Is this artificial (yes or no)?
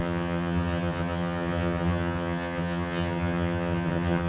yes